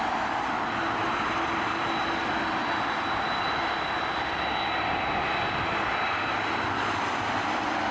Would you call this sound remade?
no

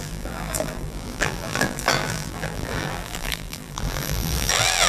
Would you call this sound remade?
yes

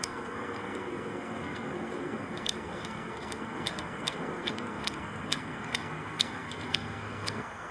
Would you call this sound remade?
yes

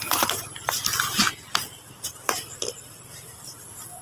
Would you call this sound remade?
yes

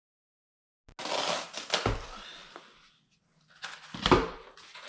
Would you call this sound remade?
no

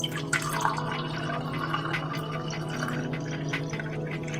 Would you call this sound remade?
no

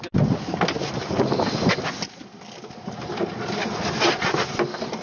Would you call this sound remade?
no